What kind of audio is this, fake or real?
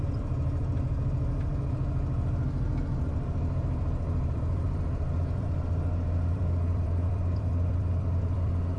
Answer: fake